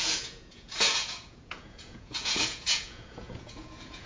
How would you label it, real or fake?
fake